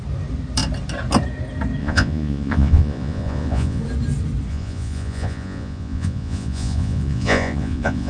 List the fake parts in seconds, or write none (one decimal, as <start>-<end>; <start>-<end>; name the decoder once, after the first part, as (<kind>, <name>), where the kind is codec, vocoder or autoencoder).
1.8-3.8 (vocoder, Vocos); 4.5-8.1